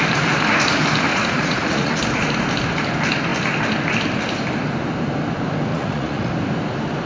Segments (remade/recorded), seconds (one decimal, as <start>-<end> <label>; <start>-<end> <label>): 0.0-1.1 recorded; 1.1-2.0 remade; 2.0-5.7 recorded; 5.7-6.3 remade; 6.3-7.1 recorded